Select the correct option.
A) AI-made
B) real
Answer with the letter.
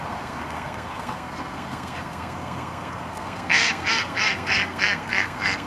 A